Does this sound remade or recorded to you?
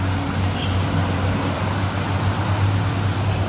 recorded